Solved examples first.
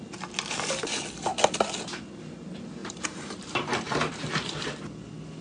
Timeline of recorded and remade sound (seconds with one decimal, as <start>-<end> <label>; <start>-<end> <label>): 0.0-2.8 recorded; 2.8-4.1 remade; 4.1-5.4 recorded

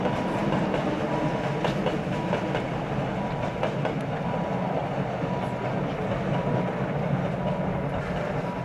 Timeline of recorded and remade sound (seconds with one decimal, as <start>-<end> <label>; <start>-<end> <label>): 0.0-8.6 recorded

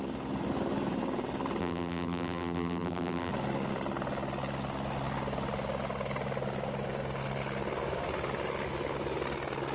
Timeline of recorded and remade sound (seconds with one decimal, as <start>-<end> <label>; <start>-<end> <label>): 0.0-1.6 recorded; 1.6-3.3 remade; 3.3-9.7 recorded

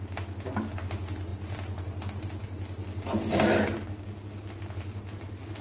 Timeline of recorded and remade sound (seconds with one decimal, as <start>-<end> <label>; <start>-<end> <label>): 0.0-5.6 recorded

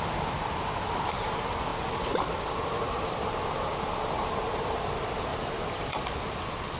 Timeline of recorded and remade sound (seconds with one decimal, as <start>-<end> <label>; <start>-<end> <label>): 0.0-5.3 recorded; 5.3-5.9 remade; 5.9-6.8 recorded

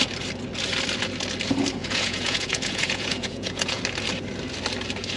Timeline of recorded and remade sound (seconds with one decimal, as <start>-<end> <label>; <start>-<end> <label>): 0.0-1.8 recorded; 1.8-3.8 remade; 3.8-5.2 recorded